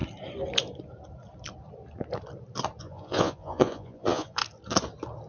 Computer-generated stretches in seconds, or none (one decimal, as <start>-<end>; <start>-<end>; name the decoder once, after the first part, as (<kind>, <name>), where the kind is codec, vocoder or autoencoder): 2.8-4.4 (vocoder, Vocos)